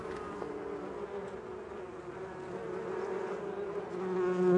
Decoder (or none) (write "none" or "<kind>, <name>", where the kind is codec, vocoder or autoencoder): none